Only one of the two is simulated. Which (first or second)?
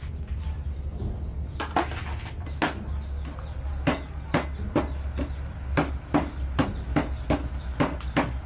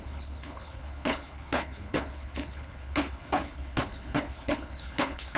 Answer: second